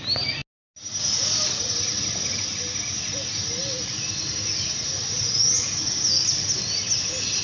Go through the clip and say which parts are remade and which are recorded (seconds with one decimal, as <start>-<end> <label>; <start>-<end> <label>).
0.0-7.4 recorded